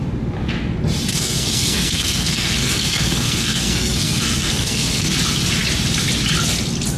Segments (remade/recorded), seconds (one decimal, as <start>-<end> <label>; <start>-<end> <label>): 0.0-1.1 recorded; 1.1-5.1 remade; 5.1-7.0 recorded